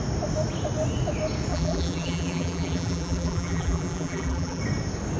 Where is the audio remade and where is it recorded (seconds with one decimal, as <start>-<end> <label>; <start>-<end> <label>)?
0.0-1.5 recorded; 1.5-4.6 remade; 4.6-5.2 recorded